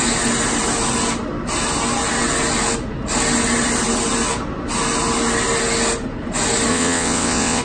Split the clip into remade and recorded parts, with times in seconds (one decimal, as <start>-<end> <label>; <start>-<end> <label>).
0.0-6.7 recorded; 6.7-7.6 remade